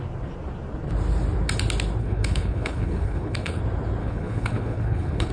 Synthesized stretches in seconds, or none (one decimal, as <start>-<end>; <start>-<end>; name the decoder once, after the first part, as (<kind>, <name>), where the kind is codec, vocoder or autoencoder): 2.0-3.6 (codec, HILCodec); 4.0-5.3